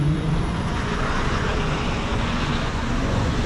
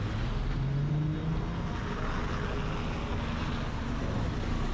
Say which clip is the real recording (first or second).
second